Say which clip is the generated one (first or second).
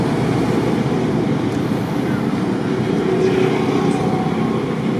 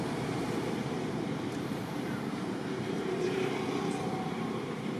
second